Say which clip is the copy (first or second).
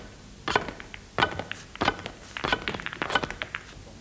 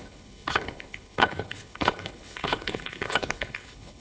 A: second